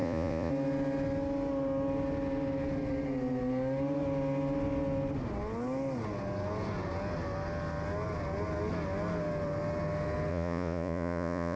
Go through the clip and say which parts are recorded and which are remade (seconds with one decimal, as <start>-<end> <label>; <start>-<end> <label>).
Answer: 0.0-0.5 remade; 0.5-10.3 recorded; 10.3-11.6 remade